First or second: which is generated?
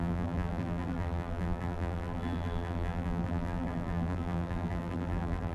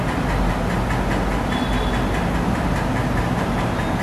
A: first